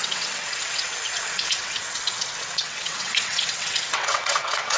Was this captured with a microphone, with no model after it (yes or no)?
no